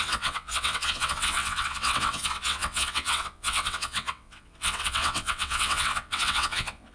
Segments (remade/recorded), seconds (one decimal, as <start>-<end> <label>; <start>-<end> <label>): 0.0-6.9 remade